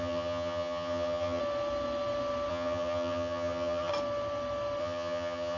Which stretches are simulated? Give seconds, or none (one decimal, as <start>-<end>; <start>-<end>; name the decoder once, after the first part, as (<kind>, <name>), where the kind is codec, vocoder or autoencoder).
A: 0.0-1.4 (vocoder, HiFi-GAN); 2.5-3.9; 4.8-5.6